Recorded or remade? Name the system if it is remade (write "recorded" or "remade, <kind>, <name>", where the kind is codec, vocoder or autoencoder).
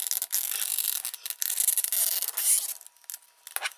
recorded